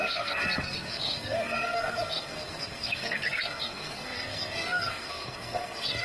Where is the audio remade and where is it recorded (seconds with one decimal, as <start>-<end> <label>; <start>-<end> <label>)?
0.0-6.0 remade